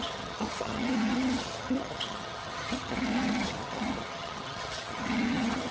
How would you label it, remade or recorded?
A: remade